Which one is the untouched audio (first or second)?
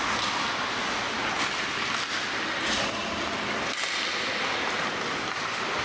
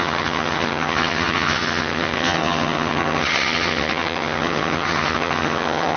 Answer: first